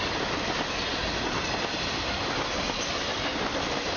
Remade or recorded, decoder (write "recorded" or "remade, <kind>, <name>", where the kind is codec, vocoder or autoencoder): recorded